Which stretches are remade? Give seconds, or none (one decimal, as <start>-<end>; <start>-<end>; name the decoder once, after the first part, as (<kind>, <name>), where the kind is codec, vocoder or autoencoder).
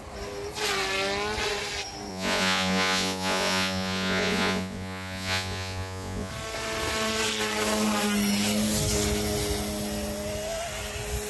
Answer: 2.1-6.3 (vocoder, Vocos)